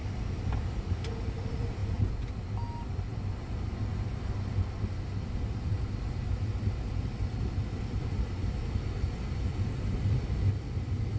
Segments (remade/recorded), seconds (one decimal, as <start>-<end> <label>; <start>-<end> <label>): 0.0-11.2 recorded